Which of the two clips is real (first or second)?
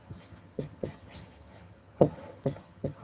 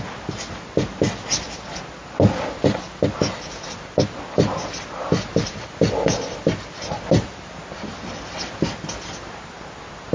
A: second